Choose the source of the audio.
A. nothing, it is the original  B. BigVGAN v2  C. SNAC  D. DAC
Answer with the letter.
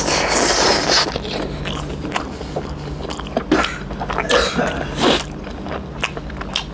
A